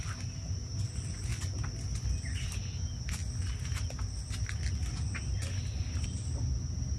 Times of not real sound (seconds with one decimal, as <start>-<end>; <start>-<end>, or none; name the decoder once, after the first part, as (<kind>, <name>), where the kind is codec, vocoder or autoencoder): none